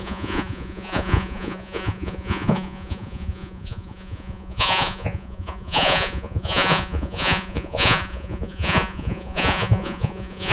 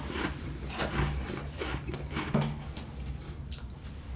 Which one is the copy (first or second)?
first